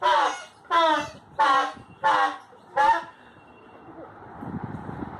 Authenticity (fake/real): real